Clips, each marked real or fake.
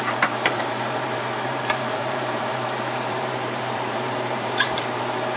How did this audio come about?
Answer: fake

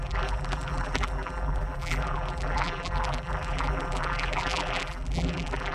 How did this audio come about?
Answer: fake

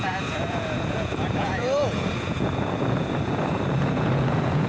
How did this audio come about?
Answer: fake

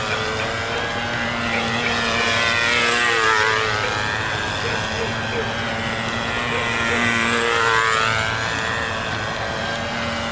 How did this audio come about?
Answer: real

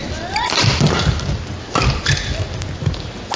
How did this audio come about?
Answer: real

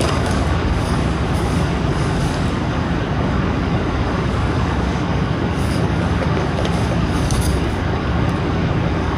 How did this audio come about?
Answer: fake